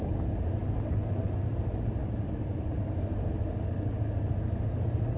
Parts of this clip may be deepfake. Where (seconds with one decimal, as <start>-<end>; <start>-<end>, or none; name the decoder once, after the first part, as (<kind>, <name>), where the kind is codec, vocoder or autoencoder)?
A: none